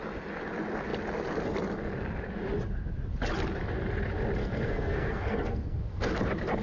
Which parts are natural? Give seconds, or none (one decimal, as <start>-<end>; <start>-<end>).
0.0-4.4; 6.1-6.6